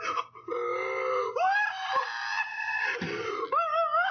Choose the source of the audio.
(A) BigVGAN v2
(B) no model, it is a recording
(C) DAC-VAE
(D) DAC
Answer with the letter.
B